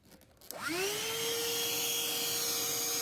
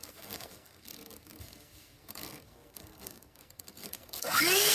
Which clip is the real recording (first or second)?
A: first